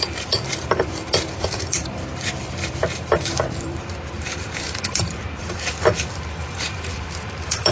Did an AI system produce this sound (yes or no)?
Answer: yes